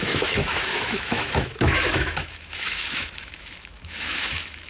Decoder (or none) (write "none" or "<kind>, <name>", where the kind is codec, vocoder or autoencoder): autoencoder, DAC-VAE